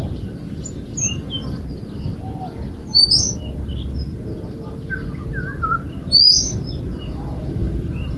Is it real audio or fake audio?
real